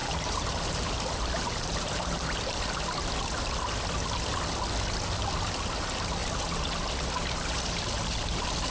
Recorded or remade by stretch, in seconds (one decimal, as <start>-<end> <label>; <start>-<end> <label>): 0.0-2.6 remade; 2.6-8.7 recorded